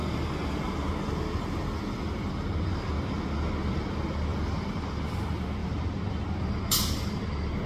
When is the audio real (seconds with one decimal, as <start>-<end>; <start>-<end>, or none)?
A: 0.0-4.3; 5.0-5.6; 6.6-7.7